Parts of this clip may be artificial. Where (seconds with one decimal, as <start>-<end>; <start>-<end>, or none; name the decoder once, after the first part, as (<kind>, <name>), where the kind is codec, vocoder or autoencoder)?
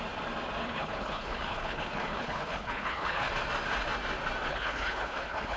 0.6-3.3 (codec, HILCodec); 4.5-5.6